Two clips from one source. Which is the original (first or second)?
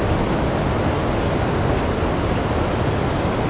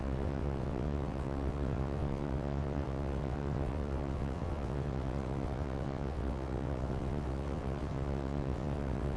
first